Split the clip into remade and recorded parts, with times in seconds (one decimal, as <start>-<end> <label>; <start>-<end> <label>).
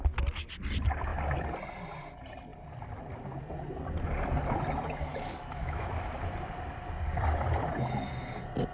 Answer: 0.0-5.1 recorded; 5.1-5.9 remade; 5.9-8.7 recorded